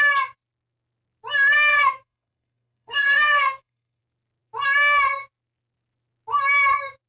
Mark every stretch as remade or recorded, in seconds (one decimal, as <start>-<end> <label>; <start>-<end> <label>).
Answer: 0.0-1.7 recorded; 1.7-4.0 remade; 4.0-7.1 recorded